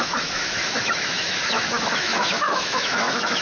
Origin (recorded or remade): remade